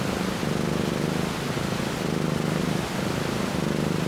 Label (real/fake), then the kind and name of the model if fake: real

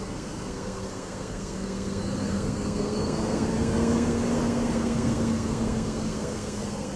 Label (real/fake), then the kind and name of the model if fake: fake, codec, SNAC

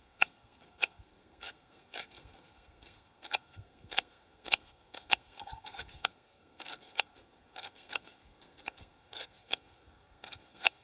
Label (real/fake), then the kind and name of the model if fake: fake, codec, SNAC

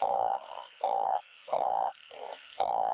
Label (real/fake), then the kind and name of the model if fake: fake, codec, SNAC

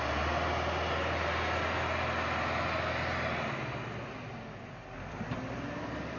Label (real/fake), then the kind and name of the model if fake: real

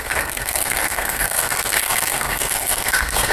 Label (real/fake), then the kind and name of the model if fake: fake, codec, SNAC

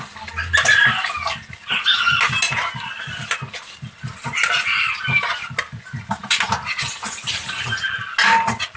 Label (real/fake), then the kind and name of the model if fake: real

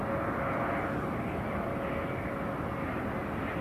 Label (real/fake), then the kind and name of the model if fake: real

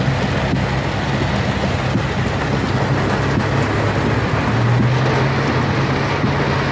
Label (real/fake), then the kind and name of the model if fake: real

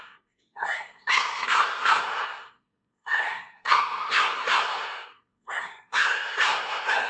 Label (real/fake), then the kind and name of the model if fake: fake, codec, SNAC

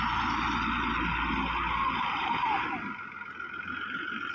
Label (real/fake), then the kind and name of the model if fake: real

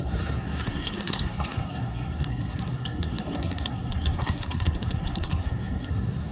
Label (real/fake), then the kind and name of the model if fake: fake, codec, SNAC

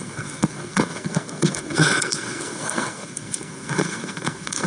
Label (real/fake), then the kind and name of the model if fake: fake, codec, SNAC